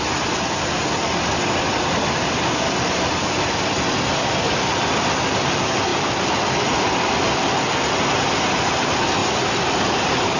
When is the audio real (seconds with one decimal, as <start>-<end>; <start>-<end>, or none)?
0.0-10.4